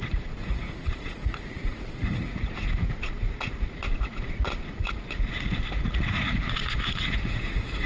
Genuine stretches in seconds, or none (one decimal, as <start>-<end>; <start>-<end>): none

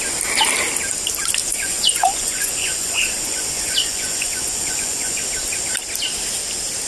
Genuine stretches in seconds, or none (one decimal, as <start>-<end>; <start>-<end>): 0.0-1.4; 5.2-6.9